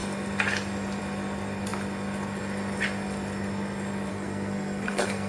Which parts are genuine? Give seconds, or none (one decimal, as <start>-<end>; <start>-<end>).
0.0-4.1